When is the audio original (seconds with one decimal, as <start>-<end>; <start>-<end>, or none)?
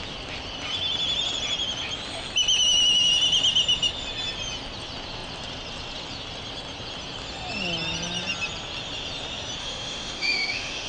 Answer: 0.0-9.6